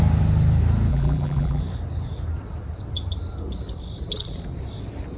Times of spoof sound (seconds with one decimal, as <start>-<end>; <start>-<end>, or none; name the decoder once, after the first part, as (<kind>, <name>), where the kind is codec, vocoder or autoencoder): 0.9-1.6 (vocoder, BigVGAN v2)